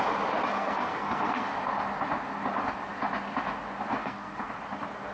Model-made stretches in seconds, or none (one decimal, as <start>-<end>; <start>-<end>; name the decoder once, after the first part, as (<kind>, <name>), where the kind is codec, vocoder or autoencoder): 0.5-1.5 (codec, SNAC); 4.0-4.5